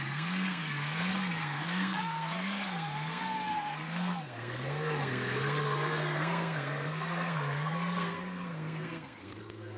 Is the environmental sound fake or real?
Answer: fake